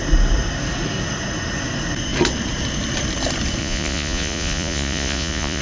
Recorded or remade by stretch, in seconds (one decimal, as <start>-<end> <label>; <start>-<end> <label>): 0.0-3.6 recorded; 3.6-5.6 remade